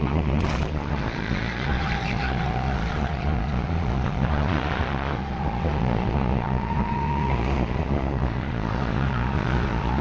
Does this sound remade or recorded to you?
remade